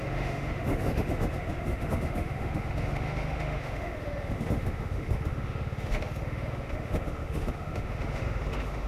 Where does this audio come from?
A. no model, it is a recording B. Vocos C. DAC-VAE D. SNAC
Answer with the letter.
C